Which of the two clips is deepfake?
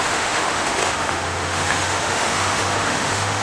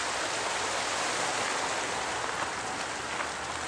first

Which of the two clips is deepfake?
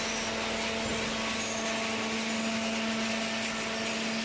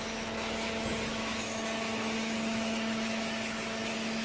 second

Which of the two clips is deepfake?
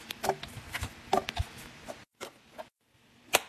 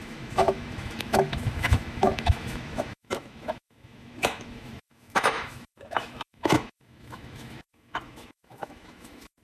second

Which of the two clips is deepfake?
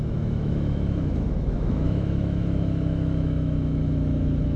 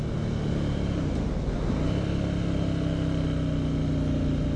first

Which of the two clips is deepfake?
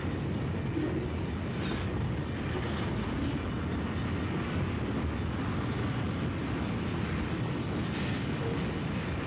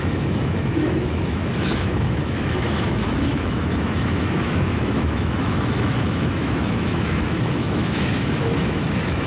second